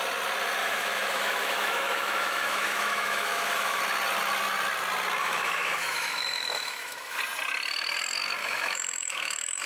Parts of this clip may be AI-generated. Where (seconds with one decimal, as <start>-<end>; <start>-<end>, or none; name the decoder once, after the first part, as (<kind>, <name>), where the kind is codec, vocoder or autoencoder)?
0.6-3.8 (autoencoder, DAC-VAE); 5.2-7.2; 8.4-9.7